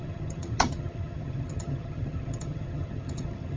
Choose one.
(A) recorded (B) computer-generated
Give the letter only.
B